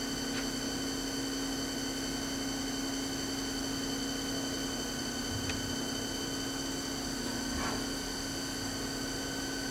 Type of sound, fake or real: real